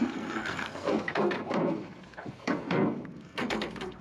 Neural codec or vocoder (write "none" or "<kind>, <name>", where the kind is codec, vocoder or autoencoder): codec, SNAC